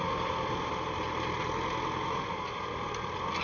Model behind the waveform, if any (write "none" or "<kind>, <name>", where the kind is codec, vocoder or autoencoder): none